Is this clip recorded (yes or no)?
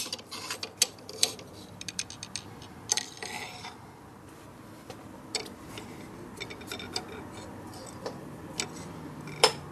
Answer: yes